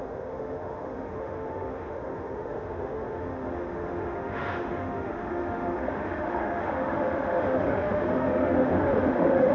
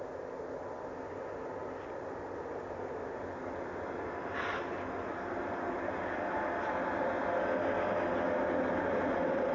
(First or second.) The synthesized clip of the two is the first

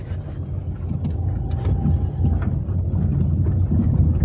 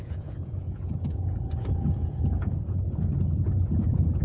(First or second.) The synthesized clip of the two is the second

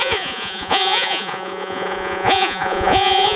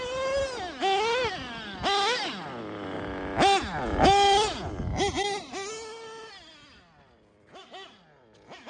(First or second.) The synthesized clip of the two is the first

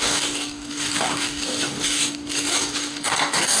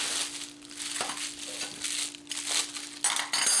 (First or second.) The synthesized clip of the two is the first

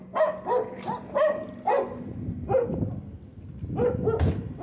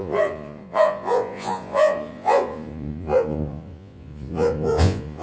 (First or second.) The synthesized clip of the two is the second